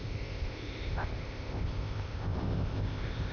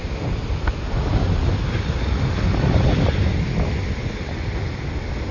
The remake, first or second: first